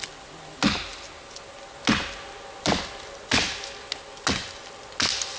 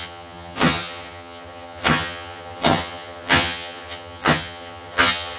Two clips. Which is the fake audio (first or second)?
second